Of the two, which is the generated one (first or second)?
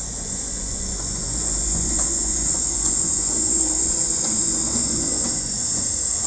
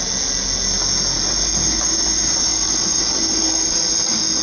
first